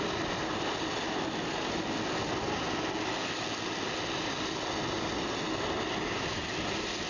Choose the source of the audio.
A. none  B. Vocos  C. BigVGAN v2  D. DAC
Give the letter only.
A